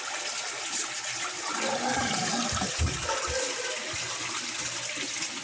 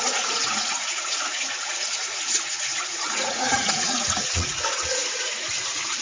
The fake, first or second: second